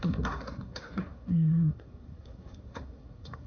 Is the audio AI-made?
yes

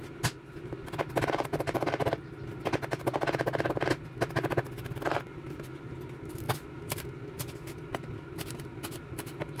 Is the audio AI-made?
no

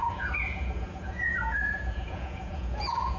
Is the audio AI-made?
yes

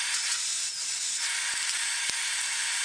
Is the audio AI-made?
no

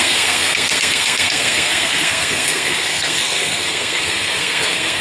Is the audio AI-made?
yes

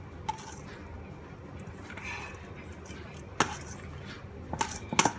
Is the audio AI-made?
no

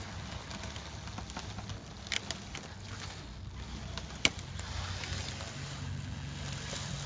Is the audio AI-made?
no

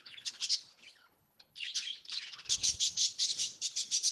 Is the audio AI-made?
yes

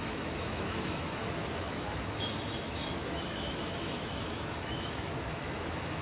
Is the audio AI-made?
yes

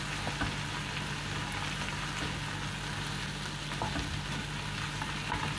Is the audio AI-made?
no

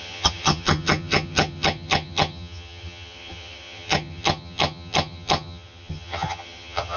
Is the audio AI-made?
yes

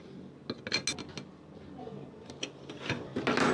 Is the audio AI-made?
no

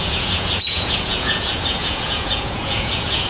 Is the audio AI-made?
yes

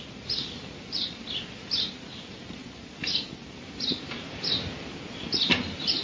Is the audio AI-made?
yes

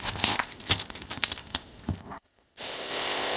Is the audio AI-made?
yes